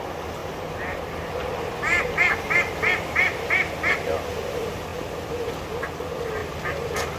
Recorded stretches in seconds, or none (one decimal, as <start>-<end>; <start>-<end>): 0.0-0.4; 3.7-6.4